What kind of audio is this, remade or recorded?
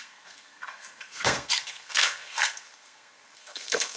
remade